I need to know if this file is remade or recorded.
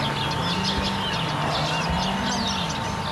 recorded